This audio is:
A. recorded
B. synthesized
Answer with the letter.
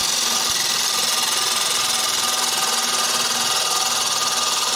A